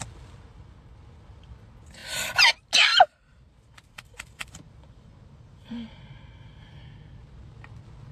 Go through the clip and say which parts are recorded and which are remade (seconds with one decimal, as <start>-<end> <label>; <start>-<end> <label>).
0.0-2.9 recorded; 2.9-6.0 remade; 6.0-8.1 recorded